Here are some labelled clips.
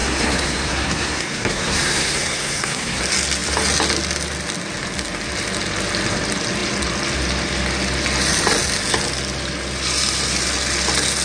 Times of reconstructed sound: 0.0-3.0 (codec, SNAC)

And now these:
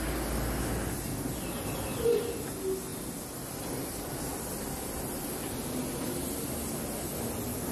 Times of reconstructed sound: none

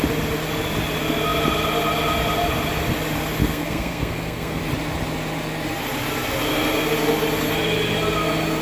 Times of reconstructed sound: 3.4-4.6 (codec, SNAC)